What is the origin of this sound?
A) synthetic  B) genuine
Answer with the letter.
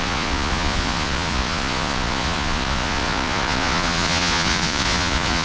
A